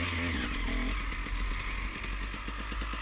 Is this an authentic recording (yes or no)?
yes